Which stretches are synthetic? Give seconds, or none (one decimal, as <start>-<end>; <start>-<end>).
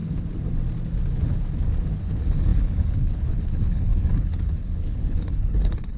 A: 2.0-6.0